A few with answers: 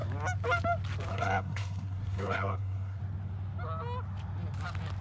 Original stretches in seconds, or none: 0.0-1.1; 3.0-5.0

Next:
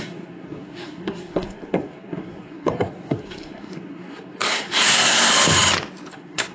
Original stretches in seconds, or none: 5.3-6.1